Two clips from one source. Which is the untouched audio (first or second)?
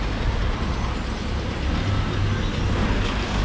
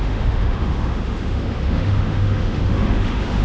first